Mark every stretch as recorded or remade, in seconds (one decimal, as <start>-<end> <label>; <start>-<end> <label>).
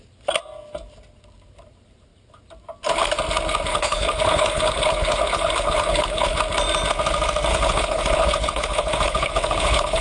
0.0-3.7 recorded; 3.7-6.4 remade; 6.4-7.5 recorded; 7.5-10.0 remade